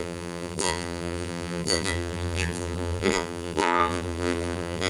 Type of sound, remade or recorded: remade